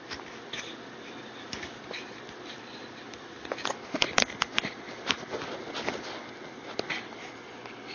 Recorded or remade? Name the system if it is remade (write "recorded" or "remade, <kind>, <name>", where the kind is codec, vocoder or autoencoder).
recorded